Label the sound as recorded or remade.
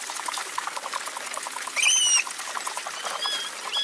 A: recorded